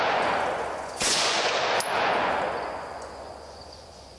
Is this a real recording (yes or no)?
no